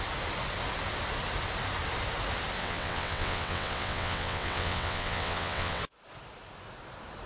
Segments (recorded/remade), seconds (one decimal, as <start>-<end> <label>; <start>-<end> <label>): 0.0-2.6 recorded; 2.6-5.8 remade; 5.8-7.3 recorded